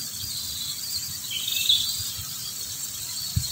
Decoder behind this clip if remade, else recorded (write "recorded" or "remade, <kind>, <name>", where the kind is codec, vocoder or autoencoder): recorded